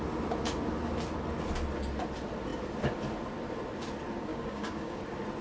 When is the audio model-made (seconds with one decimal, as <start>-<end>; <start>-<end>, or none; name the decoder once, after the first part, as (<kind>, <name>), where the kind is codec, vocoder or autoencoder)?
4.3-5.0 (codec, DAC)